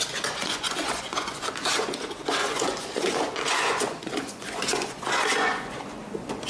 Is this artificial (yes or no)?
yes